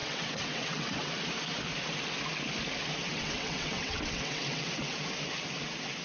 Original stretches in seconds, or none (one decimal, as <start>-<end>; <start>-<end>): 1.1-3.0; 5.0-6.0